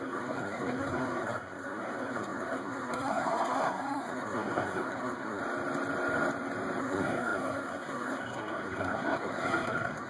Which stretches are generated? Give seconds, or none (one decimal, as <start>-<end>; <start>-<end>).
0.0-5.4; 6.8-10.1